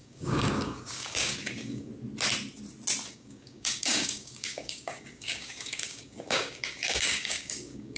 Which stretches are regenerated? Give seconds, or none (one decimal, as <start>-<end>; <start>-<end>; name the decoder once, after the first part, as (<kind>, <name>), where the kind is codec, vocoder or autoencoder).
0.0-1.9 (codec, DAC); 3.1-8.0